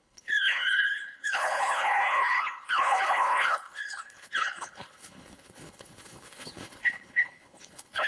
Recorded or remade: remade